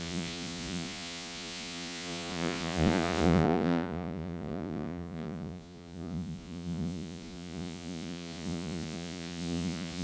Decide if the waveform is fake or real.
fake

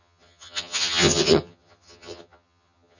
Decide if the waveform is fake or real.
fake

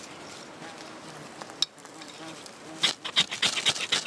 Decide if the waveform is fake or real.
real